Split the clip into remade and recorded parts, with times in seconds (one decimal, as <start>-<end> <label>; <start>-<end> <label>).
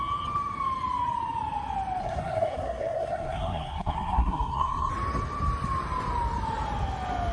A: 0.0-2.0 recorded; 2.0-4.9 remade; 4.9-7.3 recorded